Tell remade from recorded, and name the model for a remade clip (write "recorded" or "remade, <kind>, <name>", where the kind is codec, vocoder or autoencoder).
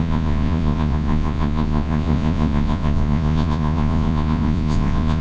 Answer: remade, vocoder, Vocos